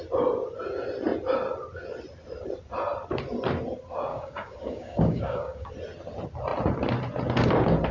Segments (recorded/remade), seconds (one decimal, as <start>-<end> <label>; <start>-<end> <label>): 0.0-4.1 recorded; 4.1-5.7 remade; 5.7-7.9 recorded